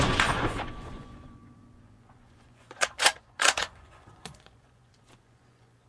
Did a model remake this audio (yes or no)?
yes